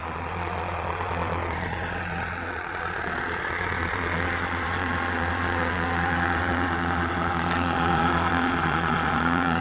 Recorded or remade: remade